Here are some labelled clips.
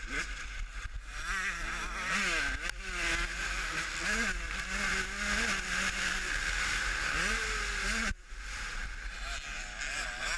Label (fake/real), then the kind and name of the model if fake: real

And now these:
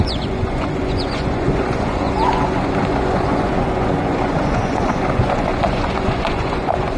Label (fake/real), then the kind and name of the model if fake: fake, vocoder, Vocos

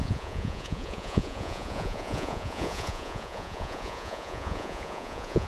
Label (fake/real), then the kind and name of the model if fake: fake, vocoder, Vocos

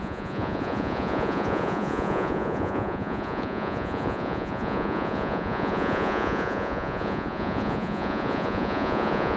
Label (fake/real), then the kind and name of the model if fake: fake, vocoder, Vocos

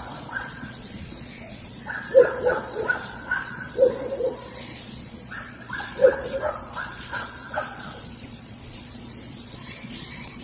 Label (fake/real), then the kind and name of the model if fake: fake, vocoder, Vocos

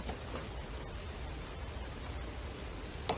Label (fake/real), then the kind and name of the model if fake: real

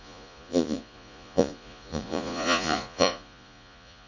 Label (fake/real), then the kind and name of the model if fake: fake, vocoder, Vocos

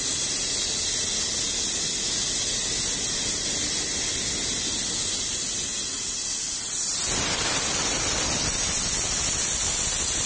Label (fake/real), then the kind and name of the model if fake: real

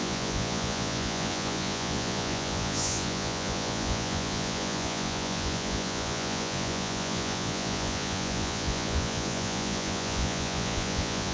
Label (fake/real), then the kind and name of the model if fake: fake, vocoder, Vocos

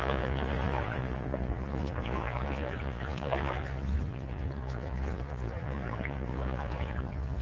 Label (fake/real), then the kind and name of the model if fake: fake, vocoder, Vocos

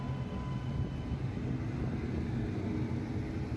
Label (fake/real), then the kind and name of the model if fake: real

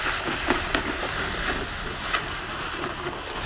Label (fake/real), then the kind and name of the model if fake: real